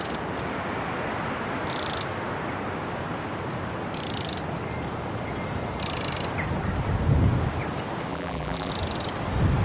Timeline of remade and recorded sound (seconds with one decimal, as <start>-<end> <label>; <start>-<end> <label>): 0.0-8.1 recorded; 8.1-8.7 remade; 8.7-9.6 recorded